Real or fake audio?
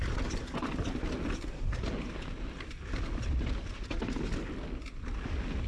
real